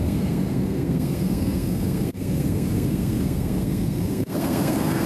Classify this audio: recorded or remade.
remade